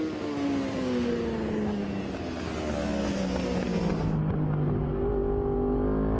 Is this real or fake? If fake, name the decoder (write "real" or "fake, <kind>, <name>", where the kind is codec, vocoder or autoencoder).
real